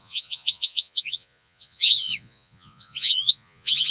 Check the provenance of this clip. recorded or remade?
remade